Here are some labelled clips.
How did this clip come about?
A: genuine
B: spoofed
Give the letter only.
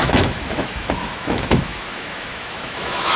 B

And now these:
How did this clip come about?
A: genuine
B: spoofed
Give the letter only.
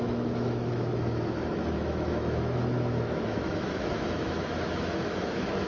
B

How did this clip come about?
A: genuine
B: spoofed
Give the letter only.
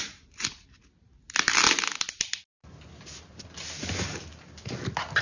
A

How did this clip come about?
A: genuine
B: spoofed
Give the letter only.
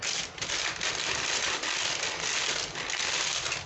A